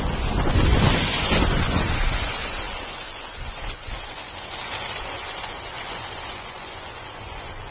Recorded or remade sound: remade